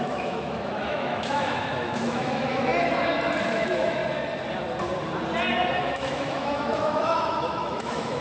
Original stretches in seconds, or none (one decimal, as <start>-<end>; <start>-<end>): 2.7-3.4; 4.0-5.8